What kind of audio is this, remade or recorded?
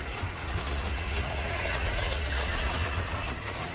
remade